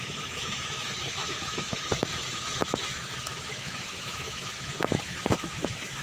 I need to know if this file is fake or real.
fake